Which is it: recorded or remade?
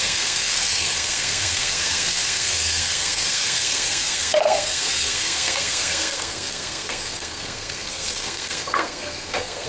remade